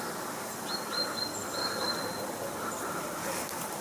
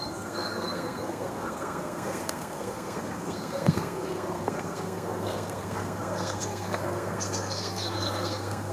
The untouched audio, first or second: first